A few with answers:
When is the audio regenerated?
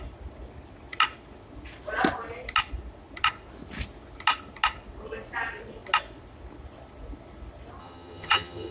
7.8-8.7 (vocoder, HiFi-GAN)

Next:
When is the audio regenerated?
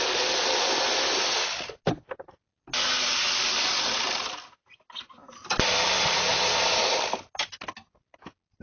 none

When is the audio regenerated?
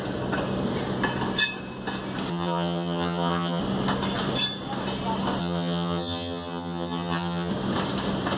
2.3-3.6 (vocoder, HiFi-GAN); 5.4-7.5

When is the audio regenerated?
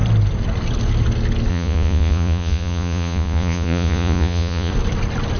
1.5-4.7 (vocoder, Vocos)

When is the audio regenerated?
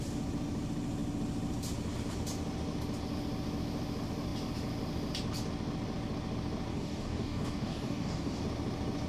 6.7-8.4 (codec, DAC)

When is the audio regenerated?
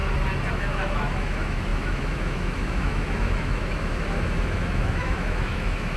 0.5-6.0 (autoencoder, DAC-VAE)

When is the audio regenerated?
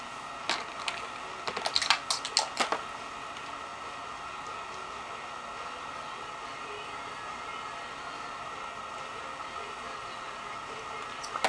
none